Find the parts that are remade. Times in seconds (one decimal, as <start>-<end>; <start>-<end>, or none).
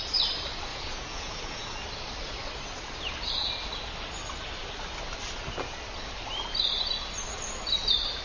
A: 0.7-1.7